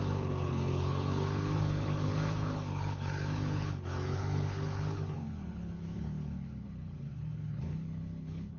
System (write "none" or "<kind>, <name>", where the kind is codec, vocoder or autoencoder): codec, HILCodec